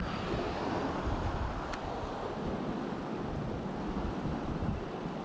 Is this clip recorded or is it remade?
recorded